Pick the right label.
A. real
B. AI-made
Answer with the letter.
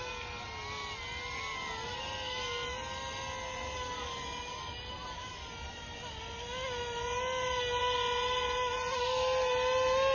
A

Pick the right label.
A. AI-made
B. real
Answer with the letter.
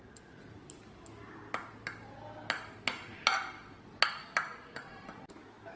B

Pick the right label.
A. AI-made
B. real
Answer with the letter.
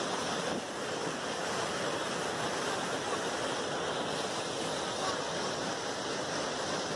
B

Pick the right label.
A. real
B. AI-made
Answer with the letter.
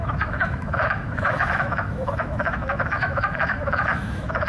B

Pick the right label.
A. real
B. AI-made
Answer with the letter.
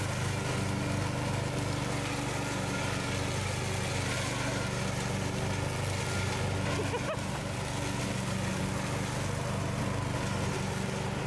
A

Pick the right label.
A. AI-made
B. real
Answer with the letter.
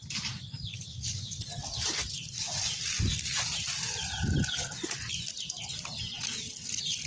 B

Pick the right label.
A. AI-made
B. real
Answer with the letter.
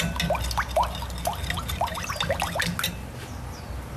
B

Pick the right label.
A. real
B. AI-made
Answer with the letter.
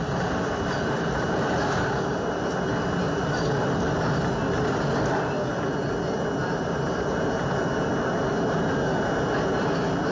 A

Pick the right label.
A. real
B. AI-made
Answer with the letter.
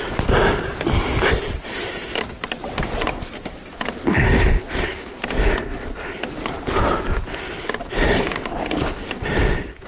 A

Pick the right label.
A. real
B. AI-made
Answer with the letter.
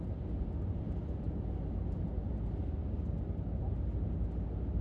A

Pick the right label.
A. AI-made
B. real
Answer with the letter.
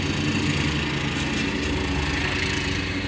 B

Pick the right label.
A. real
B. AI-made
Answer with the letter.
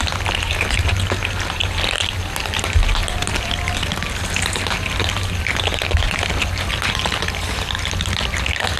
A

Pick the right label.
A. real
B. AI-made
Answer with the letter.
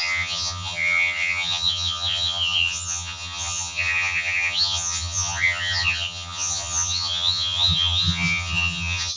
B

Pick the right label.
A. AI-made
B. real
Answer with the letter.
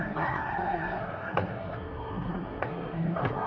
A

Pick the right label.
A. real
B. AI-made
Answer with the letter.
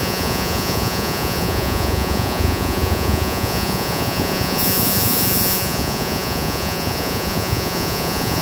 B